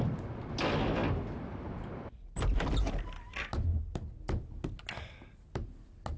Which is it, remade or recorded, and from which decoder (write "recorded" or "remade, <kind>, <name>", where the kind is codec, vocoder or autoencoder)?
recorded